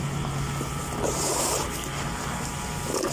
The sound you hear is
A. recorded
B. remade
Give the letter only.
A